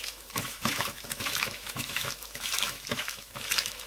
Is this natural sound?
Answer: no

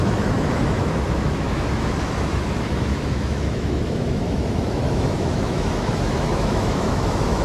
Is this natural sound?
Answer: no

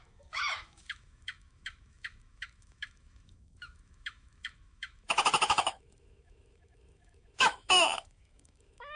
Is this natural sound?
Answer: no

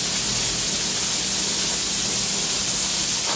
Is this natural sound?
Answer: yes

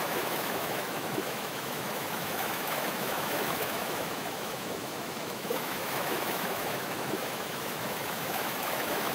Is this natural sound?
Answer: no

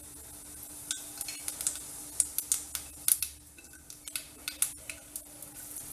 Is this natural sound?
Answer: yes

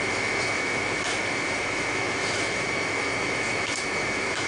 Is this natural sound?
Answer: no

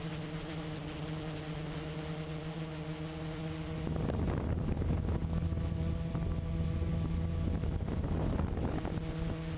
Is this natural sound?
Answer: yes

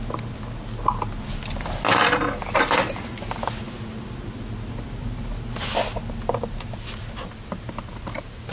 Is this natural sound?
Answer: yes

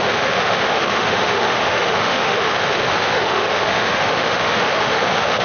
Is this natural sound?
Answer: no